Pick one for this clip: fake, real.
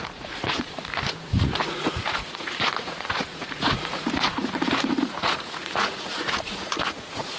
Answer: fake